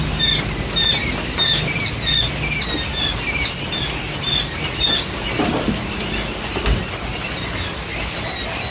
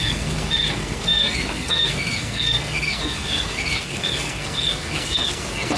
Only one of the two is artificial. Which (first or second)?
second